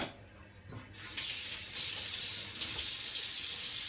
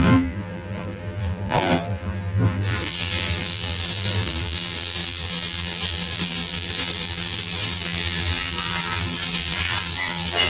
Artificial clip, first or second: second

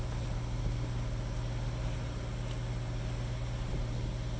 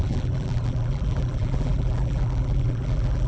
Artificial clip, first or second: second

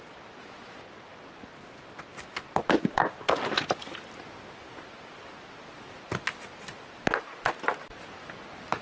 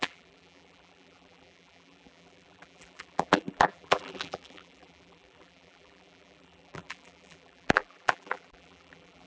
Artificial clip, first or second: second